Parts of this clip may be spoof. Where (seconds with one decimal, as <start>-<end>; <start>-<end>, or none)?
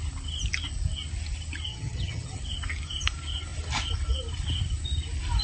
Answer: 1.7-2.4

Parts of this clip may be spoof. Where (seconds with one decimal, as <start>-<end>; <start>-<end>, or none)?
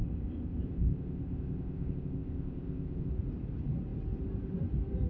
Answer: 0.0-3.1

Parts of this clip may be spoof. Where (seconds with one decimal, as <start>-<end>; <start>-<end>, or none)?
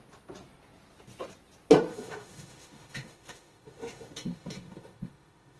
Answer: 1.9-5.6